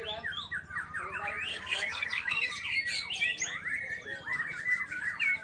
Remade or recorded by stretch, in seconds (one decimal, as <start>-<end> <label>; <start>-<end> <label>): 0.0-1.5 recorded; 1.5-2.5 remade; 2.5-5.4 recorded